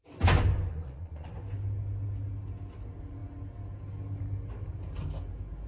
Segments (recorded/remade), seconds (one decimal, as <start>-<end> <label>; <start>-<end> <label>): 0.0-0.7 recorded; 0.7-1.3 remade; 1.3-5.7 recorded